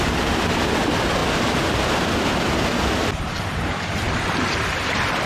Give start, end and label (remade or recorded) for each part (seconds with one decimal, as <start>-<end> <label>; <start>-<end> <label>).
0.0-5.3 recorded